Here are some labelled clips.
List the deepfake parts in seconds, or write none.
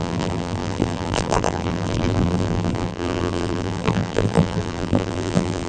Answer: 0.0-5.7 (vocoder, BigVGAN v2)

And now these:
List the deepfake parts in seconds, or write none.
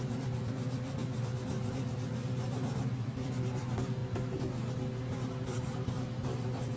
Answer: 0.0-4.0 (vocoder, BigVGAN v2); 5.3-6.8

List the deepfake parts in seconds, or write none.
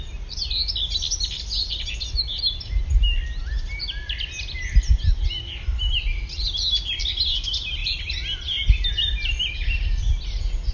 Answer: 7.8-9.5 (vocoder, BigVGAN v2)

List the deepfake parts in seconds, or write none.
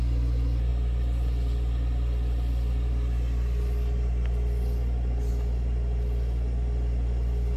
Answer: none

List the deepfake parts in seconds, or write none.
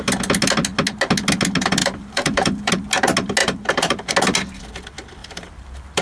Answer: 1.8-2.7 (vocoder, BigVGAN v2); 3.4-4.1; 5.2-6.0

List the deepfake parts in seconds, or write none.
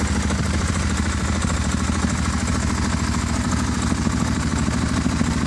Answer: none